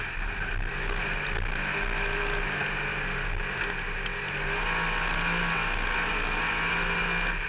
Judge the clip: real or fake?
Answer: real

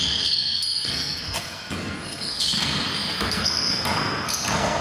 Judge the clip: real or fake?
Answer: fake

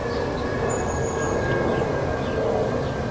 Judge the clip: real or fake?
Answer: real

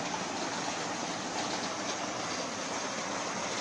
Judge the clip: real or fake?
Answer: real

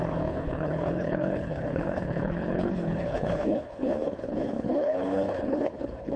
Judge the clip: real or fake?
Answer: fake